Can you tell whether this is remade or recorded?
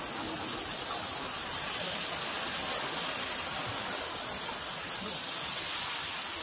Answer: recorded